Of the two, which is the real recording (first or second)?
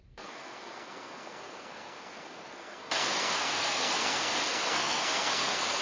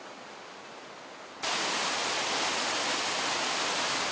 second